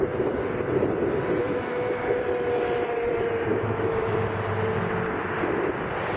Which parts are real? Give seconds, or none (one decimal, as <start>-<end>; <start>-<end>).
0.0-1.4; 2.2-3.5; 4.2-6.2